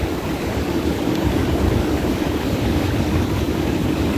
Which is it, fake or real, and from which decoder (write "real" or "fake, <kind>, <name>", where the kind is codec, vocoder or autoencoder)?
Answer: fake, codec, DAC